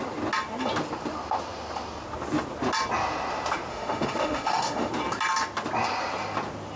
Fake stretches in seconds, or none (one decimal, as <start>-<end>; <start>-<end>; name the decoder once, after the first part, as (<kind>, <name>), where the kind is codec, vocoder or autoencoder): 3.7-4.9 (autoencoder, DAC-VAE)

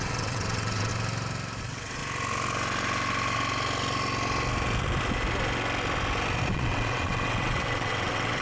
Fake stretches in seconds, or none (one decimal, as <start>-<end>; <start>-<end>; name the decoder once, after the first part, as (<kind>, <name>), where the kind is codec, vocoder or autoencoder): 0.0-0.9 (vocoder, WaveNeXt); 1.6-2.0; 6.5-8.4

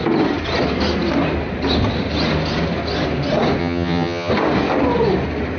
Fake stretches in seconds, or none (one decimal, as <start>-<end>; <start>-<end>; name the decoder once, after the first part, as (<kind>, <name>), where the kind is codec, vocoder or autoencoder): 3.6-4.3 (vocoder, HiFi-GAN)

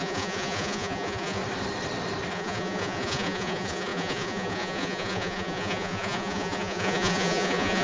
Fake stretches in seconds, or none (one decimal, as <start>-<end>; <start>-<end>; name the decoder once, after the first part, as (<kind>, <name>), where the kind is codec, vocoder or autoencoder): 0.0-1.4 (vocoder, Vocos); 2.3-7.8

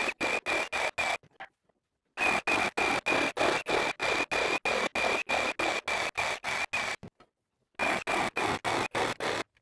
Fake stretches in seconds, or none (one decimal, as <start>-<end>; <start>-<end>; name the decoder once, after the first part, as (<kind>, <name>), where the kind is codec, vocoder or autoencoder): none

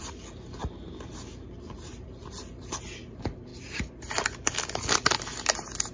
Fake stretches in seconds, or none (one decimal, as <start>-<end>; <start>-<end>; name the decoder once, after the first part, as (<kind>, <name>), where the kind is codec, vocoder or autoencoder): 3.5-4.5 (vocoder, BigVGAN v2)